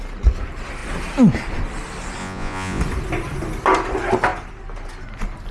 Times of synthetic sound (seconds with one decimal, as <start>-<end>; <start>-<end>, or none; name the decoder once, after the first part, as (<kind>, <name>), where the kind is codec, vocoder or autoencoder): 2.2-2.8 (vocoder, Vocos)